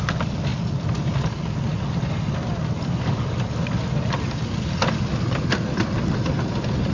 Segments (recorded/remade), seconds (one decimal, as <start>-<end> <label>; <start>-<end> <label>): 0.0-6.9 recorded